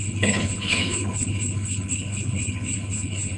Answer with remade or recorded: remade